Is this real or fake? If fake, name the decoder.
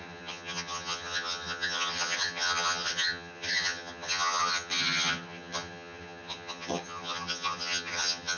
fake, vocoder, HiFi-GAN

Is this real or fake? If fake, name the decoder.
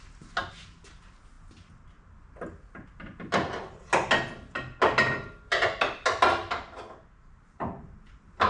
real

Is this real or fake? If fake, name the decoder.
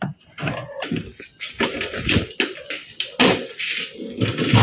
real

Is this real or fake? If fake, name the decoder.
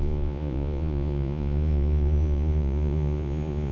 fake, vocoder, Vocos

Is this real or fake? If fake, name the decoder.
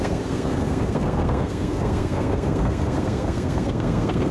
fake, codec, SNAC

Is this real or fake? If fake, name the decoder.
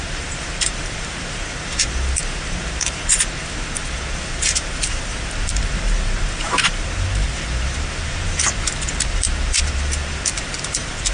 fake, vocoder, BigVGAN v2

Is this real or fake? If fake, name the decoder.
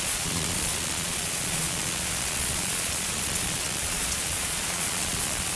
fake, vocoder, Vocos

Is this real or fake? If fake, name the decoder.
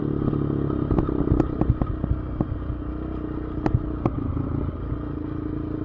real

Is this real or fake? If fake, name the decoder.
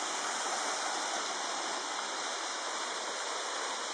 real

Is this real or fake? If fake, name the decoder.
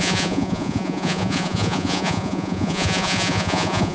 fake, vocoder, Vocos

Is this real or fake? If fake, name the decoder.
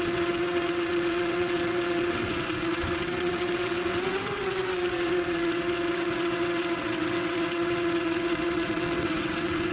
fake, vocoder, WaveNeXt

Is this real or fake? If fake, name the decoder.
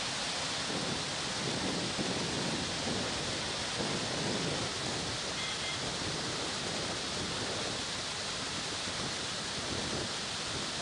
real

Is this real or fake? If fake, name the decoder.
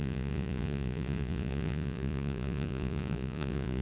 fake, vocoder, Vocos